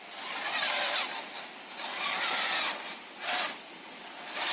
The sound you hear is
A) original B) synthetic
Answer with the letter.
A